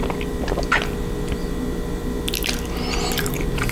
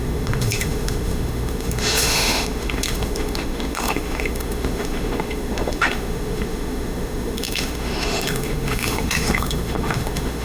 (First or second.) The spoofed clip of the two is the second